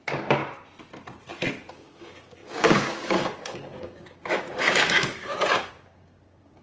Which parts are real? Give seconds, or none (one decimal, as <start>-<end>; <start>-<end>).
0.4-1.7